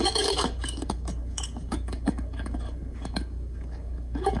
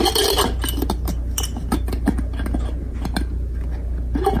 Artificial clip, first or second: first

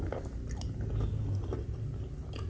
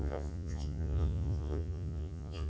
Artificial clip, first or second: second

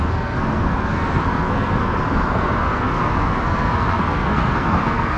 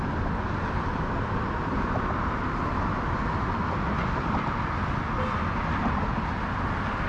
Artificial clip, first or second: first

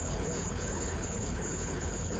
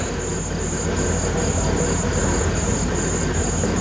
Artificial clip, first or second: first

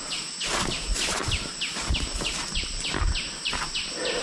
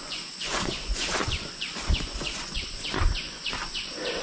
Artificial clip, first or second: second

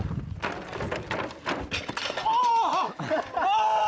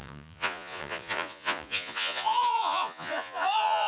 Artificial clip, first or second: second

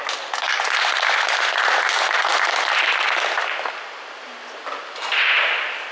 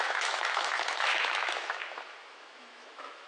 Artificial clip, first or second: second